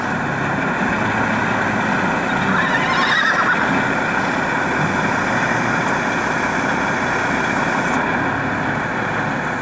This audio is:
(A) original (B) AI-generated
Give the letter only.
A